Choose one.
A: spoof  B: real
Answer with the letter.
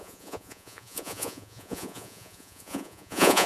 A